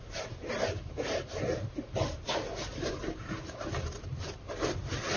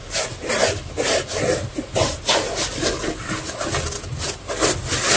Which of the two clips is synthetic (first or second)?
first